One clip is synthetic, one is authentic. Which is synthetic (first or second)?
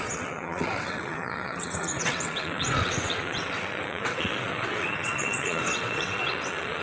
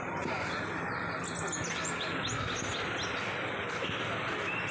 first